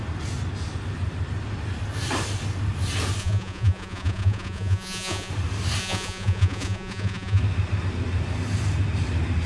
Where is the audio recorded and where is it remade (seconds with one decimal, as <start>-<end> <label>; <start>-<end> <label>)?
0.0-3.2 recorded; 3.2-5.3 remade; 5.3-5.8 recorded; 5.8-7.4 remade; 7.4-9.5 recorded